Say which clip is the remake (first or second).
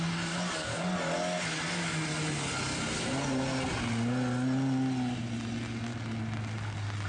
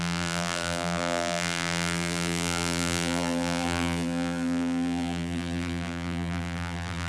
second